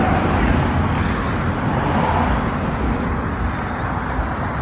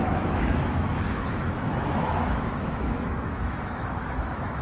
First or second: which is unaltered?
first